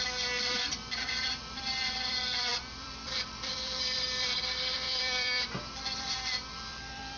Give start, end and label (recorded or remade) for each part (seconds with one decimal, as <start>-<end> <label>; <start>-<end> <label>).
0.0-7.2 remade